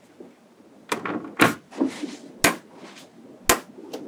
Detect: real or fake real